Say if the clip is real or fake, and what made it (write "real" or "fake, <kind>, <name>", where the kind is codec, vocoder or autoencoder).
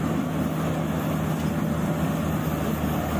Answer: real